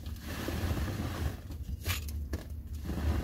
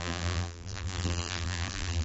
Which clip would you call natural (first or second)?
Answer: first